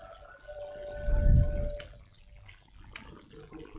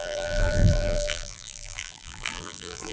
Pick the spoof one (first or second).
second